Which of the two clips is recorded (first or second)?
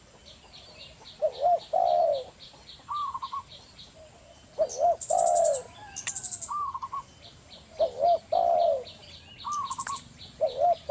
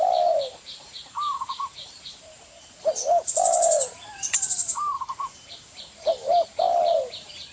first